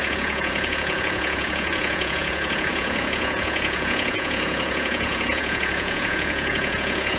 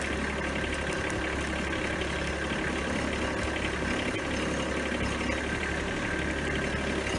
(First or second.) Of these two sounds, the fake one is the first